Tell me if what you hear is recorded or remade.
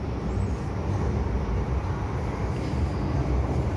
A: recorded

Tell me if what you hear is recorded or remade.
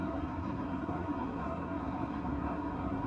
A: remade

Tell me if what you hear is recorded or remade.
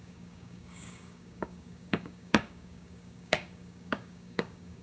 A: remade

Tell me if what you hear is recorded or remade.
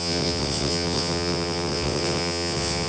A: remade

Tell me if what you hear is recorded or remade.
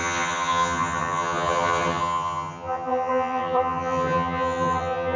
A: remade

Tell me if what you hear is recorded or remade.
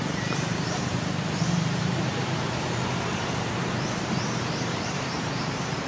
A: remade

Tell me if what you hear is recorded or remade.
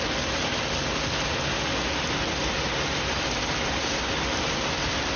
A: recorded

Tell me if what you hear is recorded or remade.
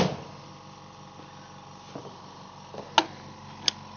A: recorded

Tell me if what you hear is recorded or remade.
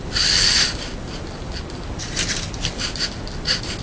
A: recorded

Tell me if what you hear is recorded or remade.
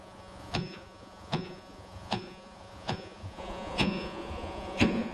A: remade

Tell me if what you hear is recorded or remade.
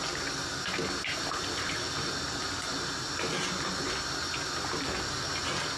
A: recorded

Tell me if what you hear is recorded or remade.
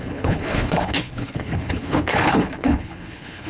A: remade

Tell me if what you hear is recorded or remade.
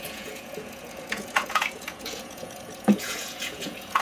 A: remade